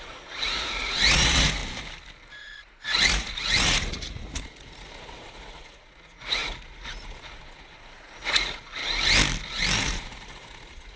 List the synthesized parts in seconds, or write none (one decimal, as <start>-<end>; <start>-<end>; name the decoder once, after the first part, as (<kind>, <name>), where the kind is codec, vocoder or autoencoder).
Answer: 0.0-1.6 (vocoder, Vocos); 2.4-8.8; 9.8-11.0